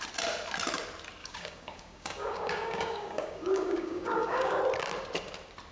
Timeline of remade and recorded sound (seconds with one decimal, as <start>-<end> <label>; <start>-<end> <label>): 0.0-1.2 recorded; 1.2-4.6 remade; 4.6-5.7 recorded